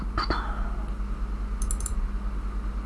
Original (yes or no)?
yes